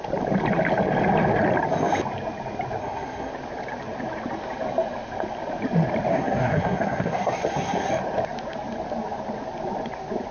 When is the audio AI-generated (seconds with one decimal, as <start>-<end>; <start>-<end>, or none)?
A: 2.8-3.3; 6.1-7.9